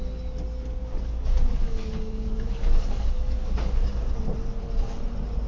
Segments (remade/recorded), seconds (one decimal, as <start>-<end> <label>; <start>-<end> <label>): 0.0-0.8 recorded; 0.8-4.1 remade; 4.1-5.5 recorded